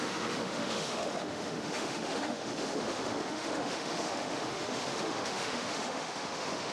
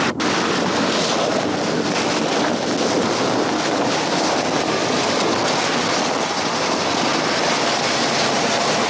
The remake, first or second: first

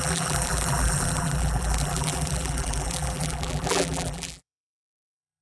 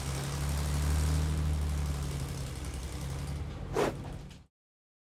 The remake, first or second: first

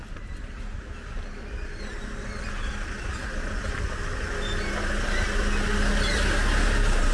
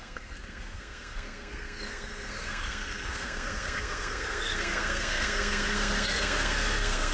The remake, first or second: second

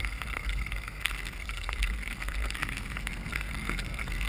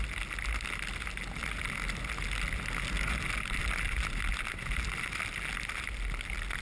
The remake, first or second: first